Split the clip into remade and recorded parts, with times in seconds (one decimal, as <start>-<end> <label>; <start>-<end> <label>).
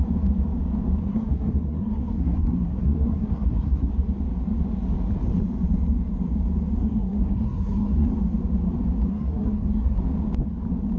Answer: 0.0-1.0 recorded; 1.0-3.9 remade; 3.9-6.8 recorded; 6.8-8.1 remade; 8.1-9.1 recorded; 9.1-10.0 remade; 10.0-11.0 recorded